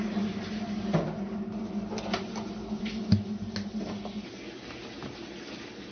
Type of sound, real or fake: real